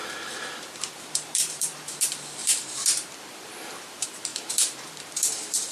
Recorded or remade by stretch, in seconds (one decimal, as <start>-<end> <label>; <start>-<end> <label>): 0.0-5.7 remade